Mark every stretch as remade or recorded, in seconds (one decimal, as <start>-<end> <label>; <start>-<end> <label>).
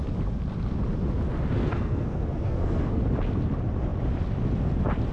0.0-1.6 recorded; 1.6-3.0 remade; 3.0-5.1 recorded